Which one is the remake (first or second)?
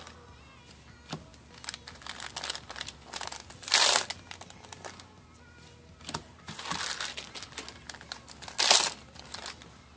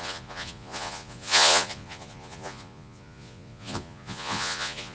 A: second